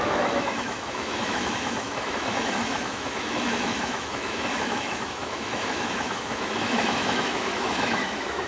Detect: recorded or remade remade